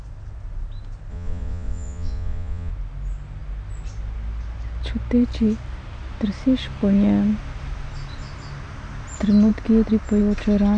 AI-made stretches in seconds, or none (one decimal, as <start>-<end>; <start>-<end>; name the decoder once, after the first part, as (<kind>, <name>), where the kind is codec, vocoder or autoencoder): 1.1-2.7 (vocoder, Vocos)